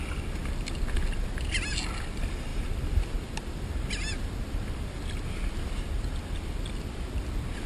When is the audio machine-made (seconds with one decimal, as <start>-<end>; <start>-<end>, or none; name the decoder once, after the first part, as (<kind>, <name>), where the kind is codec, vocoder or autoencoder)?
none

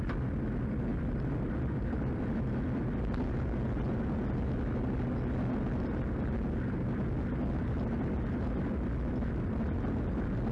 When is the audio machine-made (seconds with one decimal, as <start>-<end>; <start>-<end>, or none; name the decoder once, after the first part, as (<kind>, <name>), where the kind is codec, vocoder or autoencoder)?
0.9-2.3 (vocoder, BigVGAN v2)

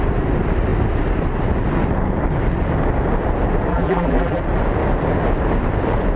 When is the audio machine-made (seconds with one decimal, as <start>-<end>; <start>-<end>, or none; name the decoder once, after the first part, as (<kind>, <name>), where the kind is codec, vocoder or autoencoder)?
3.7-4.4 (vocoder, BigVGAN v2)

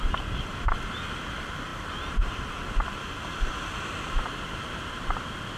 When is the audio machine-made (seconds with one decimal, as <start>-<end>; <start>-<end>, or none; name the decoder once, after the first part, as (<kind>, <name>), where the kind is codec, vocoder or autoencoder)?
none